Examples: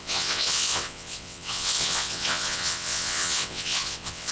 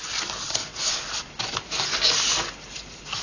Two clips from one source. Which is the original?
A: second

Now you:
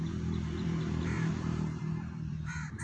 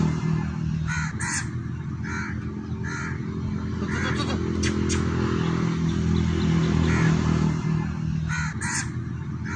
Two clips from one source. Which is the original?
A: second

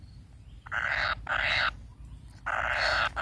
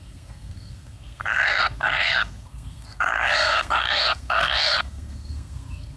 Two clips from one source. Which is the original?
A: first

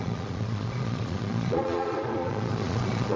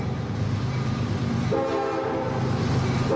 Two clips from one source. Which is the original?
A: second